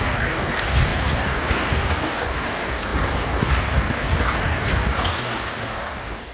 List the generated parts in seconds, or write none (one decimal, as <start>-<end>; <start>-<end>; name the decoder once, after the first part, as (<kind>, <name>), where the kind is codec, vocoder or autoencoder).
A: 0.0-6.3 (codec, DAC)